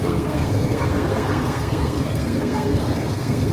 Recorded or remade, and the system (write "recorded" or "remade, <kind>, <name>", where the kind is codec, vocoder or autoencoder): remade, codec, SNAC